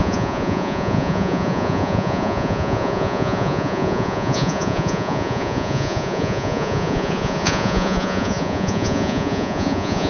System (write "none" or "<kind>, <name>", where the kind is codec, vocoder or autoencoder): vocoder, Vocos